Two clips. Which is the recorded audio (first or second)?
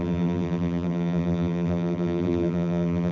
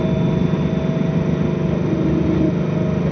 second